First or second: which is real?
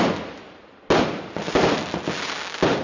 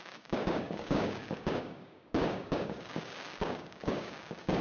first